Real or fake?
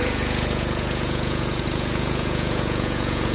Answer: fake